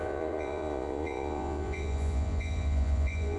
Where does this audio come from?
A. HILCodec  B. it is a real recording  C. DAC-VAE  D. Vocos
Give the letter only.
D